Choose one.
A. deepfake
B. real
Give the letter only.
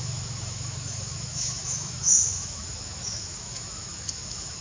A